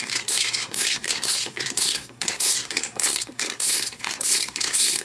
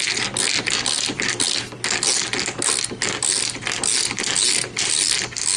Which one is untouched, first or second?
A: second